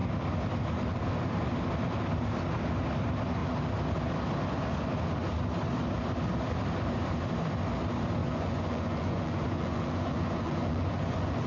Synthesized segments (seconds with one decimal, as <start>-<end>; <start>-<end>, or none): 8.2-11.5